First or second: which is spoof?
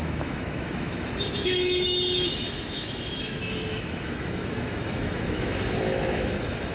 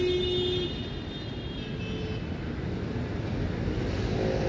first